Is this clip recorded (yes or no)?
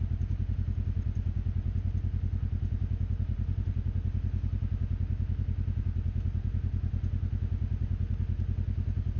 yes